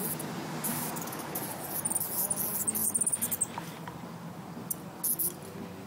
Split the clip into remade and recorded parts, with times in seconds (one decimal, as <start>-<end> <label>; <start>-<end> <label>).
0.0-0.7 recorded; 0.7-1.4 remade; 1.4-5.9 recorded